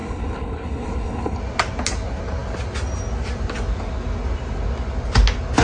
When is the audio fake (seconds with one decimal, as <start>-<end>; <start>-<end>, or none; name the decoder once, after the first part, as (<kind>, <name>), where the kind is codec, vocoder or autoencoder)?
0.0-1.4 (codec, HILCodec)